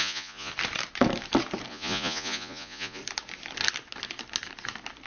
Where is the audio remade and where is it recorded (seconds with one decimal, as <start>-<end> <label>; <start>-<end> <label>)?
0.0-0.5 remade; 0.5-1.7 recorded; 1.7-3.0 remade; 3.0-5.1 recorded